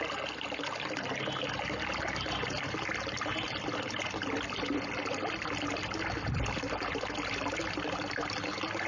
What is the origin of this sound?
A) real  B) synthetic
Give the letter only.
A